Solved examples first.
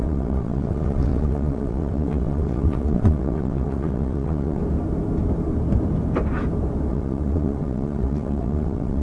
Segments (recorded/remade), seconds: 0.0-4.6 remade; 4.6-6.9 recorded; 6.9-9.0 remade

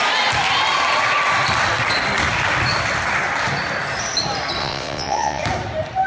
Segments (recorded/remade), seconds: 0.0-4.6 recorded; 4.6-5.4 remade; 5.4-6.1 recorded

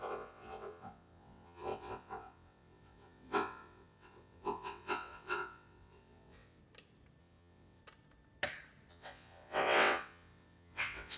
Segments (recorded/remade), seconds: 0.0-6.6 remade; 6.6-7.2 recorded; 7.2-7.8 remade; 7.8-8.9 recorded; 8.9-11.2 remade

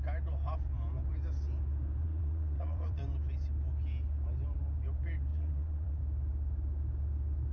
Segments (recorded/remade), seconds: 0.0-2.0 recorded; 2.0-3.0 remade; 3.0-5.3 recorded; 5.3-6.0 remade; 6.0-7.5 recorded

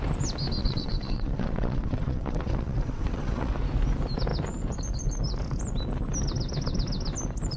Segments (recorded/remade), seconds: 0.0-0.6 recorded; 0.6-3.5 remade; 3.5-7.6 recorded

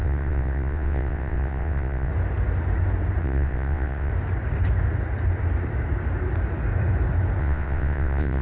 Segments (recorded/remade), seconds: 0.0-2.1 remade; 2.1-3.2 recorded; 3.2-4.1 remade; 4.1-7.4 recorded; 7.4-8.4 remade

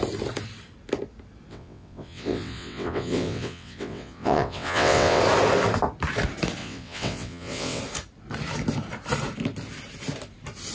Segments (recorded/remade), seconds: 0.0-1.5 recorded; 1.5-5.2 remade; 5.2-6.6 recorded; 6.6-7.8 remade; 7.8-10.7 recorded